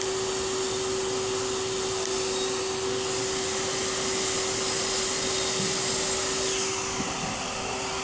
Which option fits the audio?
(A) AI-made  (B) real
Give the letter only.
B